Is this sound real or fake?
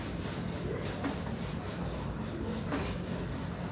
real